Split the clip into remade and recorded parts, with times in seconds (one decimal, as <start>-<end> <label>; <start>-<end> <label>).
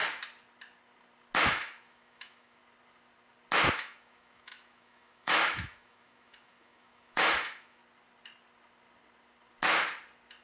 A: 0.0-1.4 recorded; 1.4-2.6 remade; 2.6-3.7 recorded; 3.7-7.8 remade; 7.8-10.4 recorded